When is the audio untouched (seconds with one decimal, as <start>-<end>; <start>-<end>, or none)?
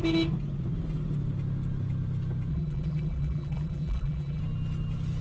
0.0-2.5; 4.4-5.2